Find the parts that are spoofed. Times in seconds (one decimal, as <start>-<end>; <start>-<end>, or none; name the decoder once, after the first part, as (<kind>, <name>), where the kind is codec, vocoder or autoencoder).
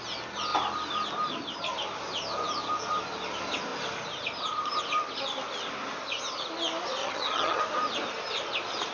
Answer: 7.0-7.6 (vocoder, HiFi-GAN)